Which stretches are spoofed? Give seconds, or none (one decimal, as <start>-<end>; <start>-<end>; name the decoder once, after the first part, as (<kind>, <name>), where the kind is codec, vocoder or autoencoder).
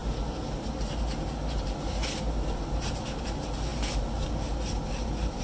none